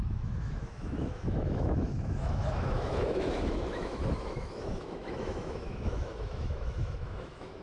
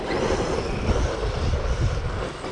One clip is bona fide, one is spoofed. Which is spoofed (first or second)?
first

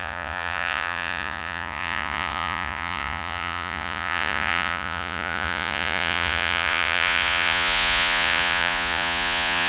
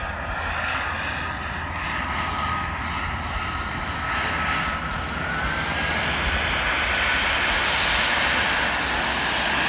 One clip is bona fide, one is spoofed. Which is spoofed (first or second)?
first